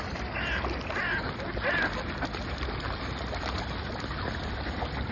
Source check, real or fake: real